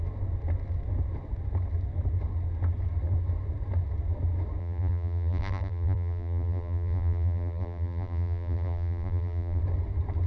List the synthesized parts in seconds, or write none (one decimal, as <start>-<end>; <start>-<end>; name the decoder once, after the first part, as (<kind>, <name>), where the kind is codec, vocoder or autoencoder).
4.6-9.6 (vocoder, BigVGAN v2)

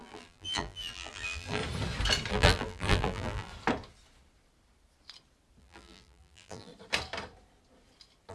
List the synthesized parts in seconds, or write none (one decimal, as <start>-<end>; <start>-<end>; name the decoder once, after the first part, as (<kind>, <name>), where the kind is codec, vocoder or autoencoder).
0.0-1.6 (vocoder, BigVGAN v2); 2.3-3.5; 5.6-6.7

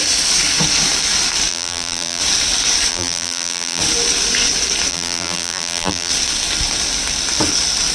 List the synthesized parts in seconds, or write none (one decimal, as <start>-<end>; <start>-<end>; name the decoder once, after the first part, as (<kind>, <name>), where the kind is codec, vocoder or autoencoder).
1.5-2.2 (vocoder, BigVGAN v2); 2.9-3.8; 4.9-6.1

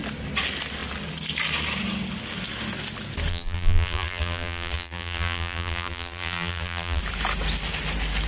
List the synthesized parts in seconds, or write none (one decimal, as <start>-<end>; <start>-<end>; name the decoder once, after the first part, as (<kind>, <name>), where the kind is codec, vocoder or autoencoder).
3.3-7.0 (vocoder, BigVGAN v2)

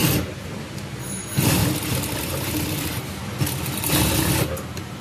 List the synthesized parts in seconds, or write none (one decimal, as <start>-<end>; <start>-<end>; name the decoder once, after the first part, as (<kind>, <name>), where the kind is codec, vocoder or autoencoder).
0.0-1.6 (vocoder, BigVGAN v2); 2.2-3.2

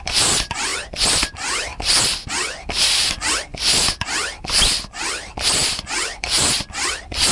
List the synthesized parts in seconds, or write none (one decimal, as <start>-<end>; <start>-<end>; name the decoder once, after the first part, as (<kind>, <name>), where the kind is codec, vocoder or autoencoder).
0.0-0.7 (vocoder, BigVGAN v2); 1.2-1.7; 2.3-3.5; 4.1-7.3